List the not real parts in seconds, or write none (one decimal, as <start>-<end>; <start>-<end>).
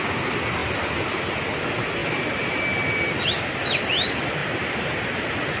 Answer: 2.0-2.6; 4.4-5.0